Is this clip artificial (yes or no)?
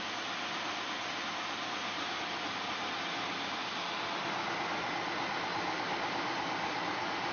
no